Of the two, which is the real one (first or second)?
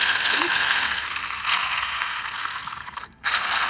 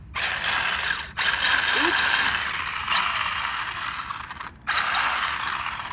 second